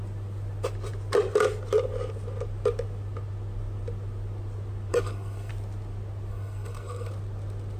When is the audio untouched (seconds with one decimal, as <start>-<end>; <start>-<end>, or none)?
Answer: 0.0-4.9; 5.5-6.3; 7.1-7.8